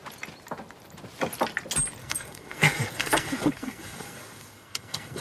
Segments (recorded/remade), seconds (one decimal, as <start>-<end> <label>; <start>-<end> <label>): 0.0-2.0 recorded; 2.0-5.2 remade